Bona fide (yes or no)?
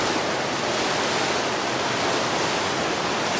yes